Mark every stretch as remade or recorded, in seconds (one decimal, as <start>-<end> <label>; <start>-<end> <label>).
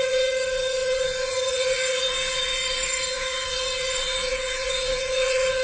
0.0-5.6 remade